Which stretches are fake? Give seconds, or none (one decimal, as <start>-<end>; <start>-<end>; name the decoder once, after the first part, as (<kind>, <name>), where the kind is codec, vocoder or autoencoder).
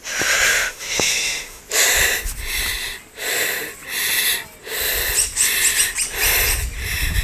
0.5-1.6 (autoencoder, DAC-VAE)